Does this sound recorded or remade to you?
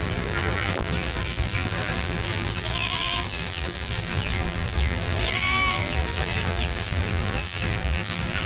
remade